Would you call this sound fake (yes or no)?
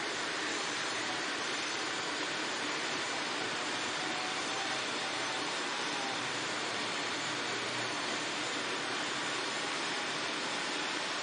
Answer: yes